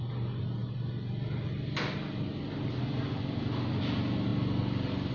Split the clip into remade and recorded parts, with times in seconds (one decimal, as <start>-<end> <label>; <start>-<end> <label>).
0.0-5.1 recorded